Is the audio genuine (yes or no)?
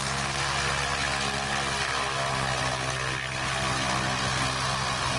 yes